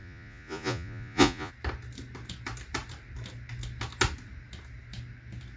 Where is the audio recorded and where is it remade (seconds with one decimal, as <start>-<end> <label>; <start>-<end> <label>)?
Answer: 0.0-1.5 remade; 1.5-5.6 recorded